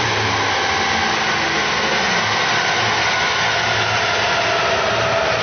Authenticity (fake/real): real